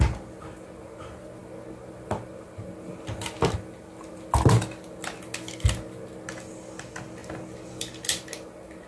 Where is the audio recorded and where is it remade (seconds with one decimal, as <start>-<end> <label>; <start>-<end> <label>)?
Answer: 0.0-8.9 recorded